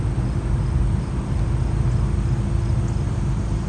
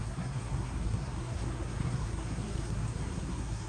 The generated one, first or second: second